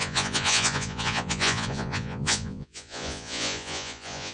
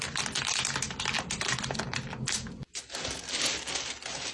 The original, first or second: second